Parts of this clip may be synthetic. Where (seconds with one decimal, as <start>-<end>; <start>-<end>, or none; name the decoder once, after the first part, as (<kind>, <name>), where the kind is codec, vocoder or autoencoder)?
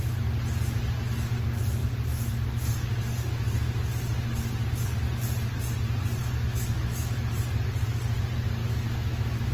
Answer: 6.2-7.3 (autoencoder, DAC-VAE); 8.6-9.5